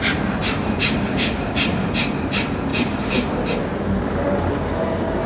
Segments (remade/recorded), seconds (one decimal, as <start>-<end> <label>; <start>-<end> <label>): 0.0-0.4 recorded; 0.4-2.1 remade; 2.1-2.7 recorded; 2.7-3.3 remade; 3.3-5.3 recorded